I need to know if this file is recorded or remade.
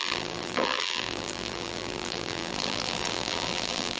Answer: remade